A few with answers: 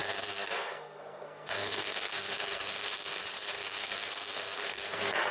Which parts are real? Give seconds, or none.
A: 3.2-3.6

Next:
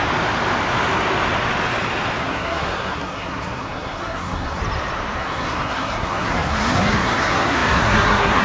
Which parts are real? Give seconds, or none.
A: 0.0-2.2; 4.6-5.2

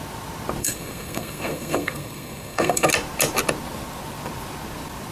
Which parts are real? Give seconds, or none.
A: 0.0-0.6; 2.9-5.1

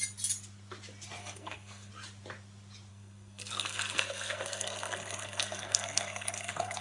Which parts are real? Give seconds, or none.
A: 0.0-1.2; 1.9-2.9

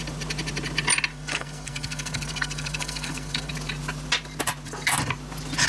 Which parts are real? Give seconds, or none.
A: 0.0-1.1; 3.5-5.7

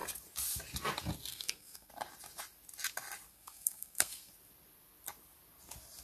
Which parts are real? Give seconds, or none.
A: 0.0-1.3; 1.9-3.3; 4.3-6.0